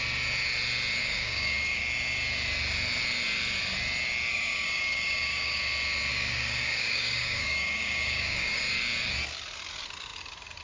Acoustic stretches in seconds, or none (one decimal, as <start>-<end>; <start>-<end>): 0.0-1.0; 1.8-4.3; 5.6-6.1; 8.6-10.6